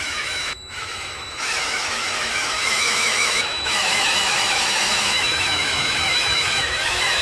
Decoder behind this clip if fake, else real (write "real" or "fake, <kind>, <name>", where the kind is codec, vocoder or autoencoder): fake, autoencoder, DAC-VAE